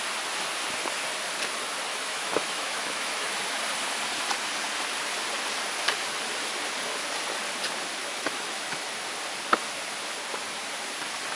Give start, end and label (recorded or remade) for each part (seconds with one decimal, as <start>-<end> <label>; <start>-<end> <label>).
0.0-1.9 recorded; 1.9-3.6 remade; 3.6-8.0 recorded; 8.0-8.9 remade; 8.9-11.3 recorded